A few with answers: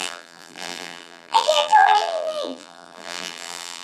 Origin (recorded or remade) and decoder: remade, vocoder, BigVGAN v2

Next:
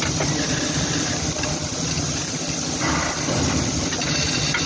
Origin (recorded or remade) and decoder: remade, vocoder, BigVGAN v2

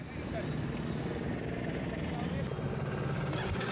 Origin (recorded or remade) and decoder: recorded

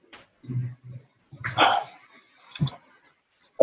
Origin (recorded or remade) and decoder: remade, vocoder, BigVGAN v2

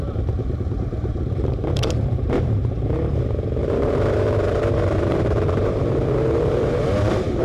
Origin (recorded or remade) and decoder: remade, vocoder, BigVGAN v2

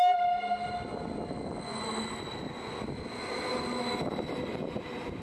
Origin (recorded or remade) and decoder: recorded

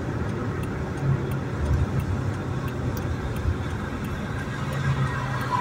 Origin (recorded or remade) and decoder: recorded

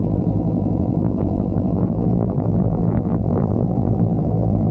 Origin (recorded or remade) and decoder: remade, vocoder, BigVGAN v2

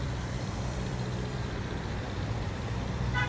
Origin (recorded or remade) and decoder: remade, vocoder, BigVGAN v2